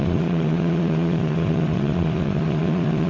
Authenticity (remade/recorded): remade